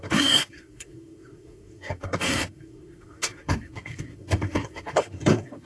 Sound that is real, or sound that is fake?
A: fake